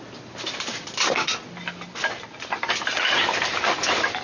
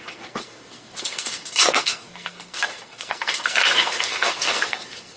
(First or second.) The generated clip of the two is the second